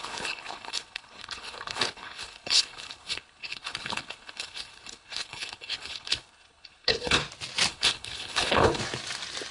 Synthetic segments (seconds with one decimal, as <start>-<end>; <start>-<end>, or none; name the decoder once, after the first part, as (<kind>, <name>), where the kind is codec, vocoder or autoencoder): 0.0-7.2 (codec, HILCodec); 7.7-8.8